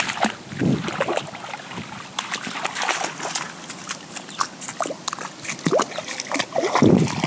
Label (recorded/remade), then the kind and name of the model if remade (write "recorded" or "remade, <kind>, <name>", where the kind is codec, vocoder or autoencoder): recorded